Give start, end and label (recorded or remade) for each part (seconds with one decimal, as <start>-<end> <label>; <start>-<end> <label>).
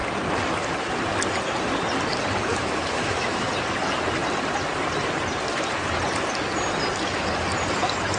0.0-2.5 recorded; 2.5-3.5 remade; 3.5-8.2 recorded